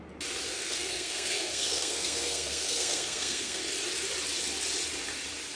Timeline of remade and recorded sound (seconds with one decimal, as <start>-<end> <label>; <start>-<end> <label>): 0.0-0.5 recorded; 0.5-3.6 remade; 3.6-5.6 recorded